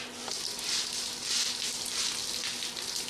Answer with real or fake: real